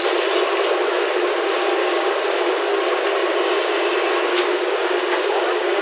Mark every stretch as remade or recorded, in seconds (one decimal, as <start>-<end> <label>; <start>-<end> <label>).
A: 0.0-1.8 recorded; 1.8-2.5 remade; 2.5-4.3 recorded; 4.3-5.8 remade